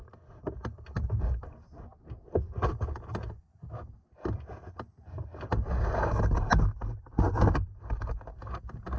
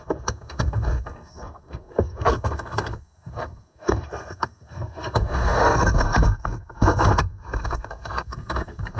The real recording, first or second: first